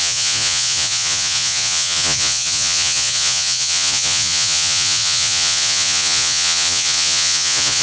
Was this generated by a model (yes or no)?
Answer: yes